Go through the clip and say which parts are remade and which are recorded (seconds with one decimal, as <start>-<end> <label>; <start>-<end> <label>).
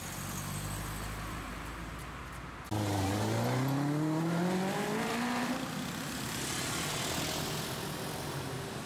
0.0-8.9 recorded